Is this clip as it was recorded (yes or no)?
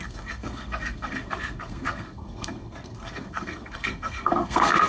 no